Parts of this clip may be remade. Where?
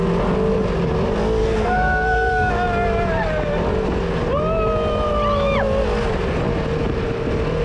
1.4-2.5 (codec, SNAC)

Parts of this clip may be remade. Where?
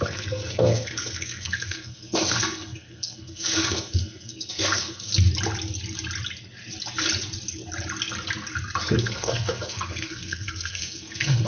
0.0-5.1 (codec, SNAC); 9.0-11.5